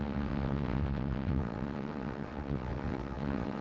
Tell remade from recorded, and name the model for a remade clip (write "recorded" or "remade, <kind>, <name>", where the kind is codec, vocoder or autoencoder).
remade, vocoder, WaveNeXt